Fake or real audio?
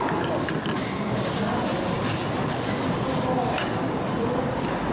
real